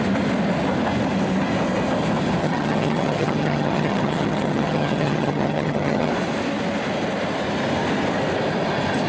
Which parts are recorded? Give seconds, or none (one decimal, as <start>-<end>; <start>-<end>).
0.0-2.4; 6.1-9.1